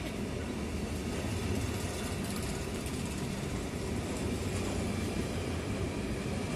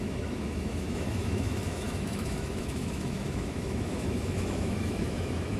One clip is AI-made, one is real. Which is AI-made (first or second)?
second